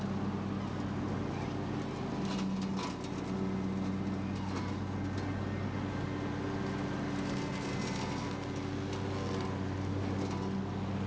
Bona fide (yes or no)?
yes